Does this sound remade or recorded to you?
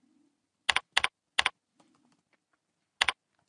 recorded